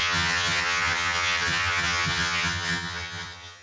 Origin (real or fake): fake